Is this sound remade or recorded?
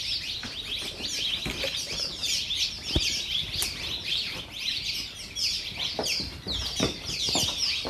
recorded